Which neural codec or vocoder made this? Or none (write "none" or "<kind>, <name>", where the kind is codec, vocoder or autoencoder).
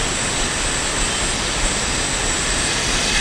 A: none